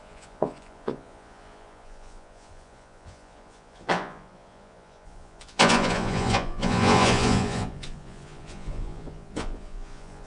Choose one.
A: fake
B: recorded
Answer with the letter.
A